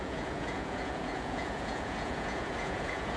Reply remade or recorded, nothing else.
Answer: remade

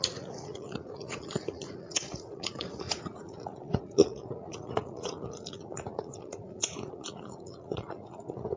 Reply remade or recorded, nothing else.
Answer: remade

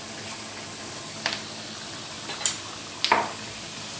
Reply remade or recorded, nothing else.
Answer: recorded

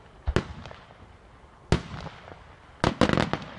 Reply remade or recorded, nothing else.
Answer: recorded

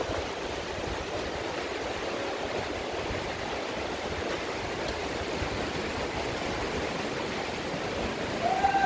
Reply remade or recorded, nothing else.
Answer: recorded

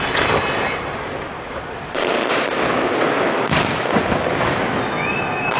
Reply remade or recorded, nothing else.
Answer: recorded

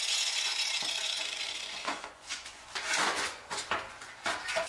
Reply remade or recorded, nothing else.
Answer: remade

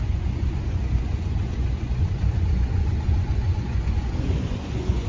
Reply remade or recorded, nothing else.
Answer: remade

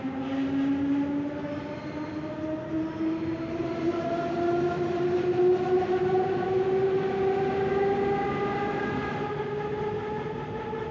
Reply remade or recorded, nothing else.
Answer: recorded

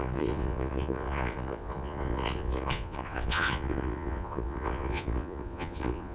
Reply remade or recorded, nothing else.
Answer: remade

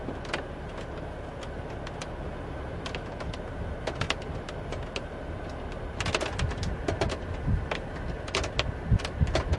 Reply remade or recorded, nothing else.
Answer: recorded